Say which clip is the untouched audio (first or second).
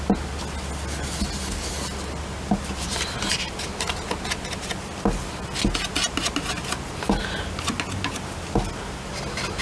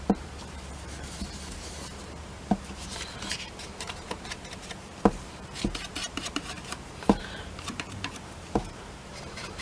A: first